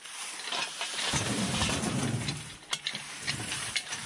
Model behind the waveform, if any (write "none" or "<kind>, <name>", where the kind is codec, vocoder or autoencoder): vocoder, BigVGAN v2